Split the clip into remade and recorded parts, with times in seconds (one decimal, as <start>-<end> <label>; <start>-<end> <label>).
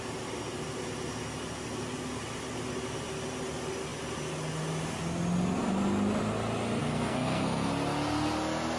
0.0-6.8 recorded; 6.8-7.7 remade; 7.7-8.8 recorded